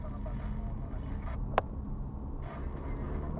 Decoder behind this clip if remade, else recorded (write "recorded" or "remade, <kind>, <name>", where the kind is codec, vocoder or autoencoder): recorded